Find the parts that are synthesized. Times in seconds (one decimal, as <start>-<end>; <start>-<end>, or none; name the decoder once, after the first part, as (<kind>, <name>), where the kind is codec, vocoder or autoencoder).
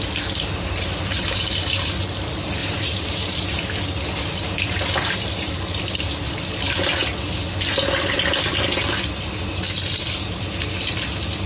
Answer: 2.6-3.6 (vocoder, BigVGAN v2)